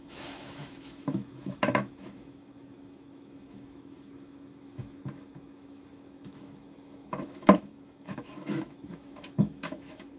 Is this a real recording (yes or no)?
no